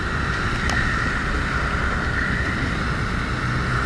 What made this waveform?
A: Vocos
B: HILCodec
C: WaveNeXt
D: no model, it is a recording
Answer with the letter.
D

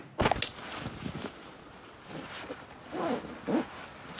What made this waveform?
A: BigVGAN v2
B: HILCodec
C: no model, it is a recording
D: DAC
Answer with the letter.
C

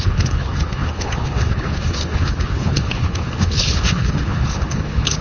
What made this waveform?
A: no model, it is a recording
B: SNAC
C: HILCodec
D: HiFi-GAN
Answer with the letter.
C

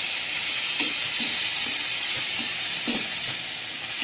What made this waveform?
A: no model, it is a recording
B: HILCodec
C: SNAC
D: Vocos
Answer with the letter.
A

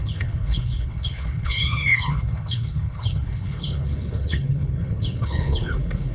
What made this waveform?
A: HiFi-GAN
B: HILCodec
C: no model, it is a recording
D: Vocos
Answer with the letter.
B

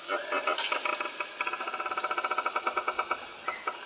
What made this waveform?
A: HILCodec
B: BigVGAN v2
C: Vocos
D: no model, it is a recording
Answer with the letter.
D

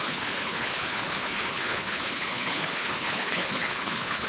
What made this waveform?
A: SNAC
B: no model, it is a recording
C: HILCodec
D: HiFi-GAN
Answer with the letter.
C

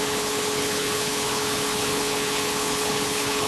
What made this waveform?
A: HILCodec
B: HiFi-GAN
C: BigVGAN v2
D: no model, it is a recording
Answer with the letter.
A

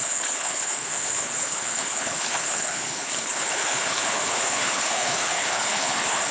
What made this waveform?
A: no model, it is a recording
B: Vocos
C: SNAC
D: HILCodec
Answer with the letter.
D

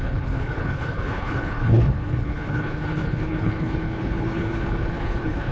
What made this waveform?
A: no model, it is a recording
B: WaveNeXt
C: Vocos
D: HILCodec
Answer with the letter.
D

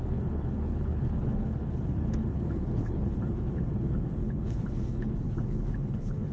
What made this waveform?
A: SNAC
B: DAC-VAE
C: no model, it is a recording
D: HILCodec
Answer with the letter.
D